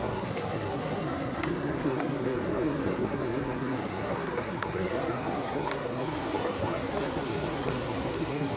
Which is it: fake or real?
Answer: fake